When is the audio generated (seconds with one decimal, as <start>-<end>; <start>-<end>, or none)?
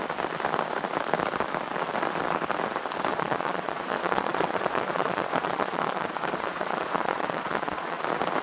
3.1-8.0